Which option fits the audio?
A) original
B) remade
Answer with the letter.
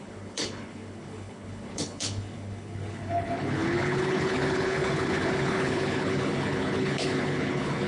B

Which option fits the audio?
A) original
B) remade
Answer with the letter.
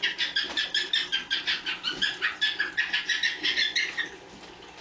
A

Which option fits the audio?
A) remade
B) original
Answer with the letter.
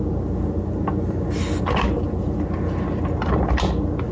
B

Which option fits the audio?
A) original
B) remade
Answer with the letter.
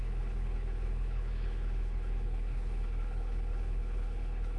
B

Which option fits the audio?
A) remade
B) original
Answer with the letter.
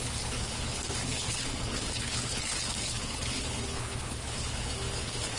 A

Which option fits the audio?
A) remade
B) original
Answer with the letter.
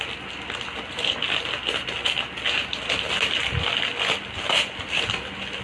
B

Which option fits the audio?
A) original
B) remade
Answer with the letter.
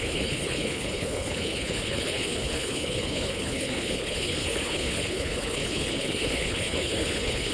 B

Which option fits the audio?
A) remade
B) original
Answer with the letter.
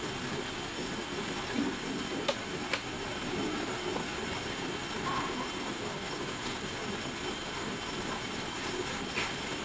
B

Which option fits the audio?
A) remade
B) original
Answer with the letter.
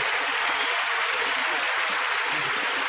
B